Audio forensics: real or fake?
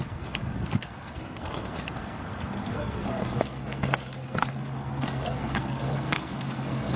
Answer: fake